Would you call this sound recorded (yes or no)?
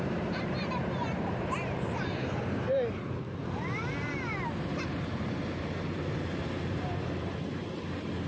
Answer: no